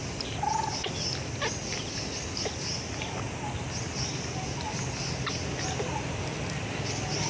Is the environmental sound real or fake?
real